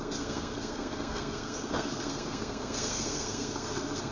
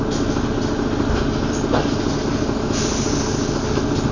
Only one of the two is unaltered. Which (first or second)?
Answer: second